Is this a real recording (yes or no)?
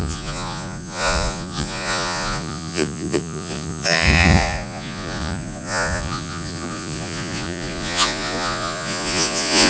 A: no